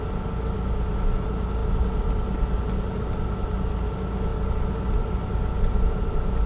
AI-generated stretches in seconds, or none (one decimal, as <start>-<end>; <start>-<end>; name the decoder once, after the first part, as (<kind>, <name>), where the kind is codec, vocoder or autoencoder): none

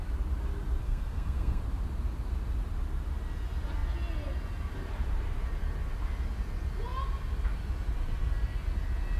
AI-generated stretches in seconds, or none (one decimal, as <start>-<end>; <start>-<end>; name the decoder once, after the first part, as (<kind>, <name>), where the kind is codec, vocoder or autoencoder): 0.8-1.6 (codec, SNAC)